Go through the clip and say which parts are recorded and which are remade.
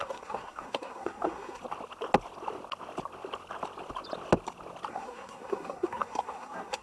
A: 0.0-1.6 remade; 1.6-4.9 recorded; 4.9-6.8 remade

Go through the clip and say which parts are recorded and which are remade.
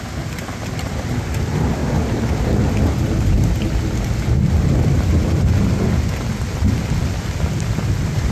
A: 0.0-1.8 remade; 1.8-6.8 recorded; 6.8-8.3 remade